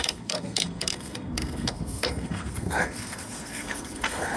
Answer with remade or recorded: remade